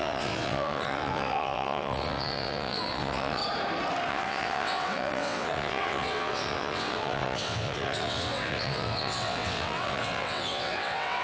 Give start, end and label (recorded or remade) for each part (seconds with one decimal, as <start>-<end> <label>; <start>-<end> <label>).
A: 0.0-3.4 remade; 3.4-4.1 recorded; 4.1-11.2 remade